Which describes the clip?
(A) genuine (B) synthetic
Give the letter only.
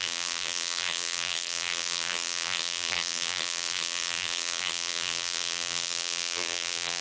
B